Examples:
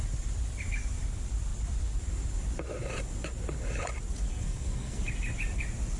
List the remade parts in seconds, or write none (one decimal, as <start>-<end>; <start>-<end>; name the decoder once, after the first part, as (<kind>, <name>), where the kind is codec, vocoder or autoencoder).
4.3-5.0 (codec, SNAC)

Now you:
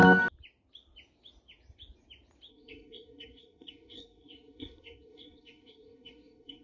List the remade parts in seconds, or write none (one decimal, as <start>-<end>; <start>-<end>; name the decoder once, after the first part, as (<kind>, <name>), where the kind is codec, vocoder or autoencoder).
2.5-6.6 (codec, SNAC)

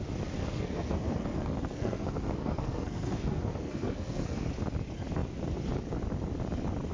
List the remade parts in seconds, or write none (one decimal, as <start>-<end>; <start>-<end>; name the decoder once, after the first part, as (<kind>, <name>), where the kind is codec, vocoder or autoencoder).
0.4-4.5 (codec, SNAC)